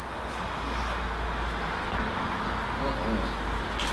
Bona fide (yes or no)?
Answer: yes